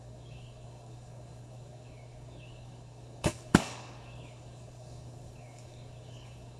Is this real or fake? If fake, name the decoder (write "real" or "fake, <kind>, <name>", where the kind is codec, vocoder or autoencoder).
fake, codec, DAC